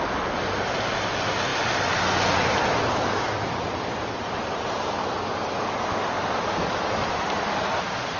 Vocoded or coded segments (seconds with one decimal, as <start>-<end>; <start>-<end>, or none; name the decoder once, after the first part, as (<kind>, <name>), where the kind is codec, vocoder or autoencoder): none